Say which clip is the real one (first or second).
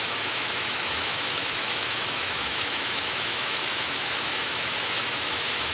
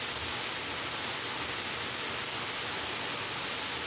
second